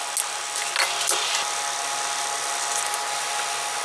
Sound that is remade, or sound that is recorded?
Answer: recorded